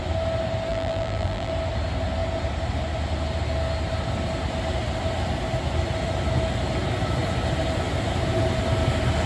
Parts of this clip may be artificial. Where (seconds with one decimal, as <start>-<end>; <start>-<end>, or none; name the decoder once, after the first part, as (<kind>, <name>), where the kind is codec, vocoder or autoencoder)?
0.7-1.5 (vocoder, BigVGAN v2)

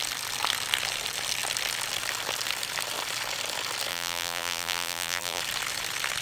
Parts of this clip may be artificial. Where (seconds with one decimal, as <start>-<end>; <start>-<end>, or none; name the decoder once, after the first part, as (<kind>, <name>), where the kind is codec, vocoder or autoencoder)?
3.9-5.4 (vocoder, BigVGAN v2)